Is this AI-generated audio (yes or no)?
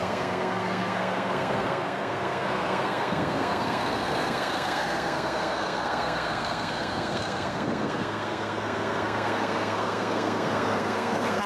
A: yes